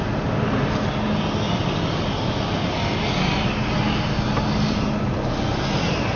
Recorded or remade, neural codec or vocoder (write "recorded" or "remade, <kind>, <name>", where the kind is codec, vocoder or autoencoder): recorded